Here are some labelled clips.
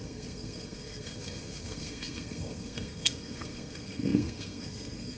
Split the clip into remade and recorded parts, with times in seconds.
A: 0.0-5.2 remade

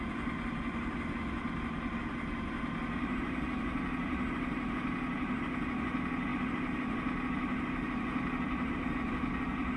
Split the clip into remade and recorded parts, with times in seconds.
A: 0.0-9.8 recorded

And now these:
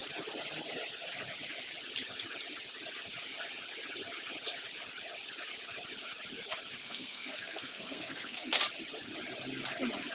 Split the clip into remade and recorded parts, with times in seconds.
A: 0.0-6.8 recorded; 6.8-8.6 remade; 8.6-10.1 recorded

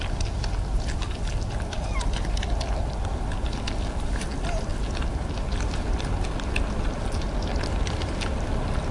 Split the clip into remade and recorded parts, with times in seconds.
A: 0.0-8.9 recorded

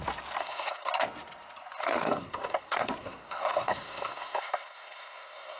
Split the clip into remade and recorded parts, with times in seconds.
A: 0.0-0.4 recorded; 0.4-0.9 remade; 0.9-1.8 recorded; 1.8-5.6 remade

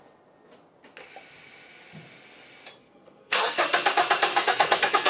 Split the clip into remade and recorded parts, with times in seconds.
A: 0.0-2.8 recorded; 2.8-3.6 remade; 3.6-4.3 recorded; 4.3-5.1 remade

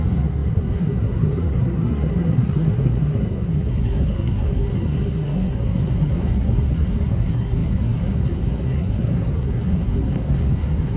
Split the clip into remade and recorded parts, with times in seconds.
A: 0.0-11.0 remade

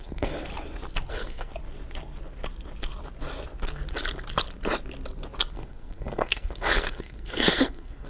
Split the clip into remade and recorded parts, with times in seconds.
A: 0.0-0.5 remade; 0.5-1.1 recorded; 1.1-1.5 remade; 1.5-5.5 recorded; 5.5-8.1 remade